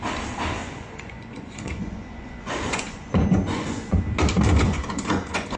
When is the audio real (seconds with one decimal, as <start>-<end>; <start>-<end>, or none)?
0.0-0.6; 4.0-4.5